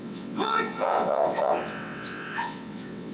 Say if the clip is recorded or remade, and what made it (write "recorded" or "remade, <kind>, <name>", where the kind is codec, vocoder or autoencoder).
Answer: remade, vocoder, WaveNeXt